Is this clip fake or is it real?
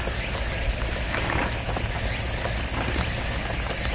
real